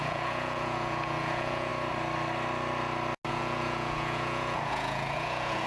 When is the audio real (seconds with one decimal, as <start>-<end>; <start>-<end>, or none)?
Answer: 1.7-3.3